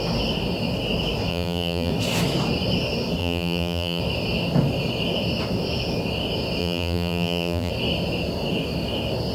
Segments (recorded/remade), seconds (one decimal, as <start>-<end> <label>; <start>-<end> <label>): 0.0-1.3 recorded; 1.3-1.9 remade; 1.9-3.2 recorded; 3.2-4.0 remade; 4.0-6.6 recorded; 6.6-7.7 remade; 7.7-9.3 recorded